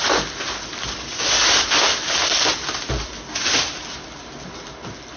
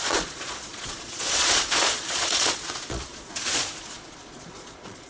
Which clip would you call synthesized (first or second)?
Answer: second